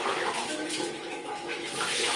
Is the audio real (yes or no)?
no